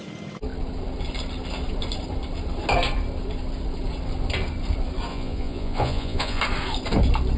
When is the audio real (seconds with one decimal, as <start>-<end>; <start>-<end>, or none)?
0.0-5.1; 6.4-7.4

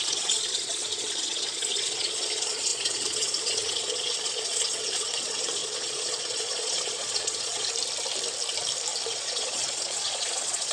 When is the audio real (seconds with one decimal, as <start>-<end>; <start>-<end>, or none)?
7.7-9.1